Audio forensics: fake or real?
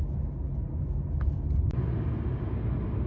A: real